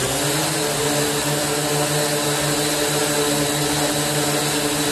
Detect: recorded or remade recorded